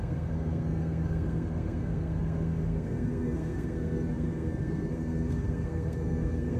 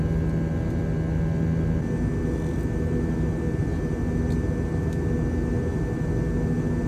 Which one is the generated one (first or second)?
first